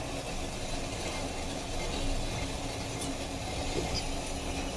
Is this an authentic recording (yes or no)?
yes